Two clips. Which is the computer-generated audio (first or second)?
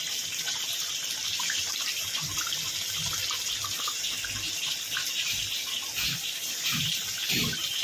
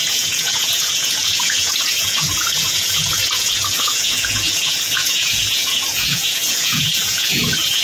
second